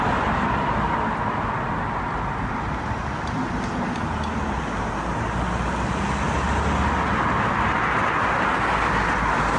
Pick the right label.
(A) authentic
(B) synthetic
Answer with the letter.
A